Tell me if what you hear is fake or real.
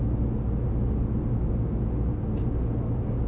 real